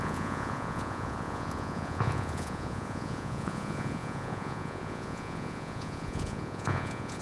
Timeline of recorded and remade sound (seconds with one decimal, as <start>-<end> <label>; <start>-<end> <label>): 0.0-7.2 remade